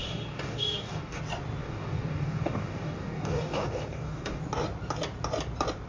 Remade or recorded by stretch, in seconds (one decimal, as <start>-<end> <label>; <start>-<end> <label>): 0.0-1.2 remade; 1.2-1.6 recorded; 1.6-4.4 remade; 4.4-5.9 recorded